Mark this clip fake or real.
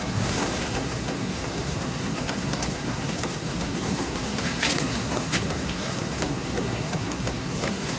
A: fake